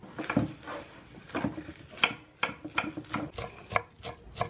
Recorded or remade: recorded